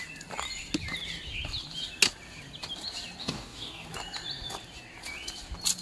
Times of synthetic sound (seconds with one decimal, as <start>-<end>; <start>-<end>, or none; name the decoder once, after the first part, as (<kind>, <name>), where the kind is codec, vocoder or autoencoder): 3.2-3.9 (codec, DAC)